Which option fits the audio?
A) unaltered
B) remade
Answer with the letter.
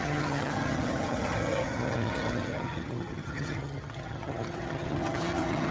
B